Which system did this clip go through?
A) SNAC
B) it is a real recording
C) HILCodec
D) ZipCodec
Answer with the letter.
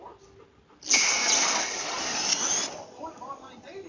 B